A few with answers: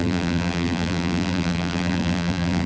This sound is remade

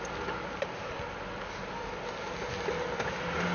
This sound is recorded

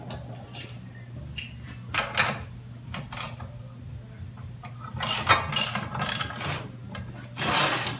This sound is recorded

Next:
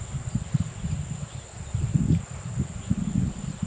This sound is recorded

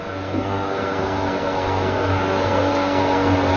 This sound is remade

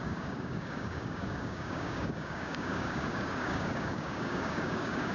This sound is remade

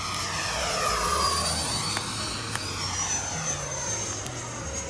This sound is recorded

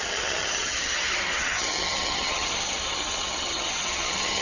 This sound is remade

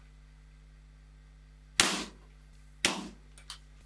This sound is recorded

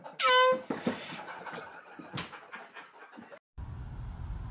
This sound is recorded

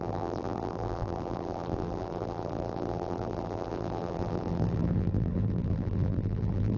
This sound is remade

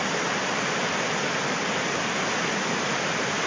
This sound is recorded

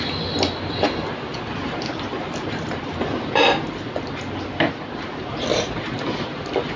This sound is recorded